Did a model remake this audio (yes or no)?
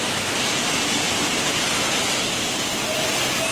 no